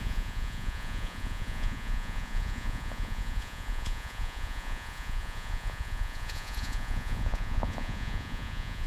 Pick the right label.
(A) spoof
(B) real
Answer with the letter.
A